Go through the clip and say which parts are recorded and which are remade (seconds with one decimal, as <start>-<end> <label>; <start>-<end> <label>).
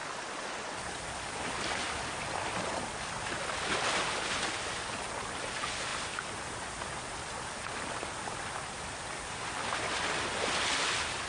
0.0-11.3 recorded